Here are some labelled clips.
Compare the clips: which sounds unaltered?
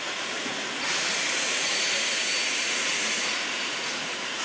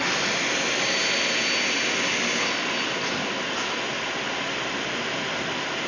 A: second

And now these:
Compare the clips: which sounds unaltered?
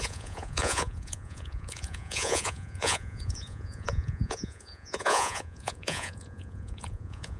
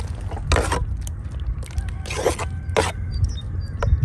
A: second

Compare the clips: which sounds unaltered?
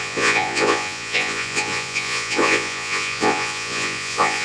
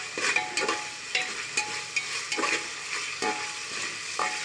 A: second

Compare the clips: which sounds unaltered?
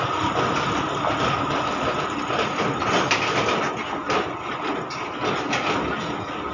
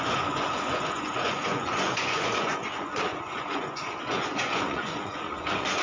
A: first